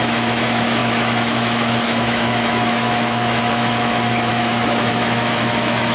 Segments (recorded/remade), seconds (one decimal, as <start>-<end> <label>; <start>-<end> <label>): 0.0-5.9 remade